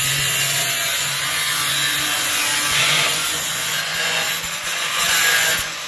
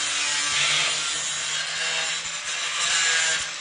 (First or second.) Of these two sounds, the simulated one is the first